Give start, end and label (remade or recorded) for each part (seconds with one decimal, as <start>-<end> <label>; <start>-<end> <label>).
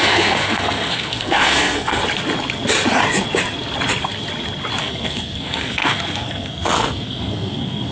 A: 0.0-2.0 remade; 2.0-4.8 recorded; 4.8-7.9 remade